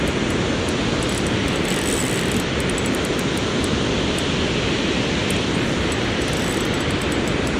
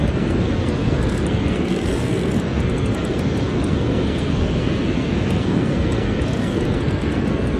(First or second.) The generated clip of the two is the second